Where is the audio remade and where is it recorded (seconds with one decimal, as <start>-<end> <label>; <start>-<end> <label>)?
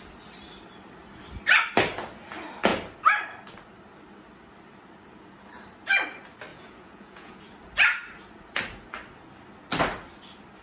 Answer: 0.0-6.5 recorded; 6.5-7.4 remade; 7.4-10.6 recorded